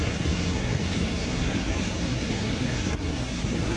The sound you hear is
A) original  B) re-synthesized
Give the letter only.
B